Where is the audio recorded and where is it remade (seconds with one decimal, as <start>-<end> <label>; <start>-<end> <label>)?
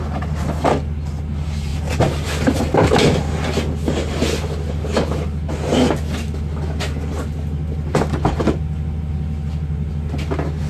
0.0-10.7 recorded